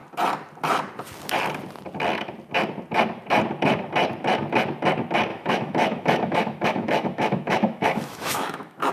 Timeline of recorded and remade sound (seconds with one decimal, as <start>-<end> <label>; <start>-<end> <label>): 0.0-5.3 recorded; 5.3-8.9 remade